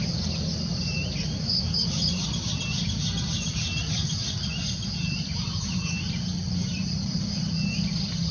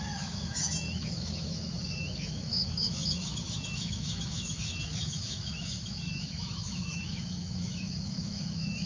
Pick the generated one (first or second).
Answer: second